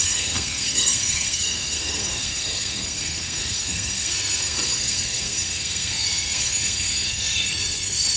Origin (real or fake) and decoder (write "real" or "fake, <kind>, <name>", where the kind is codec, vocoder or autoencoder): fake, codec, SNAC